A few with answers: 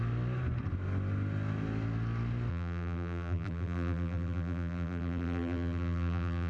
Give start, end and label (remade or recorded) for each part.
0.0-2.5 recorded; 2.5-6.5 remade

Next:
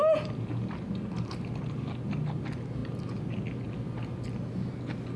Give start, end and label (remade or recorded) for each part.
0.0-5.2 recorded

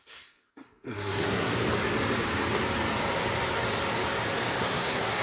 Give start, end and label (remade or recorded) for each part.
0.0-1.5 remade; 1.5-4.6 recorded; 4.6-5.2 remade

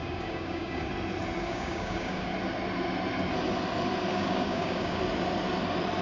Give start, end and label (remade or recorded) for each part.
0.0-0.9 remade; 0.9-1.5 recorded; 1.5-2.3 remade; 2.3-4.1 recorded; 4.1-5.0 remade; 5.0-6.0 recorded

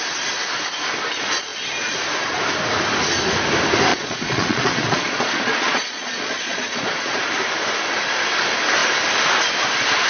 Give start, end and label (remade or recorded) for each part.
0.0-3.9 recorded; 3.9-7.2 remade; 7.2-10.1 recorded

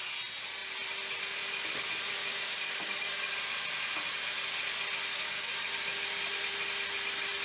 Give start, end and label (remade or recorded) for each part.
0.0-2.2 recorded; 2.2-3.3 remade; 3.3-5.1 recorded; 5.1-5.7 remade; 5.7-7.4 recorded

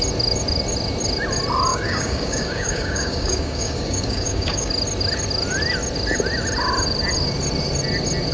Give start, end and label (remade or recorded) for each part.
0.0-1.7 recorded; 1.7-4.7 remade; 4.7-8.3 recorded